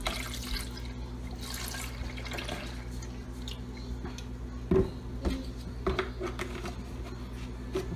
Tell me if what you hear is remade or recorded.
recorded